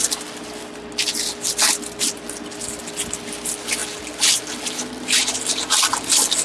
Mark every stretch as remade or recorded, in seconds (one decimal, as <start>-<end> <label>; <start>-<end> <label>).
0.0-6.4 recorded